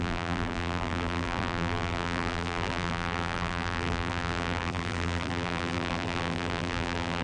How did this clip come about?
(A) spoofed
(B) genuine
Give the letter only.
A